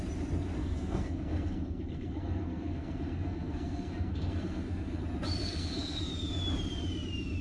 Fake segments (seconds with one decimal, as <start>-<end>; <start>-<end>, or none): 0.6-5.0; 5.4-6.1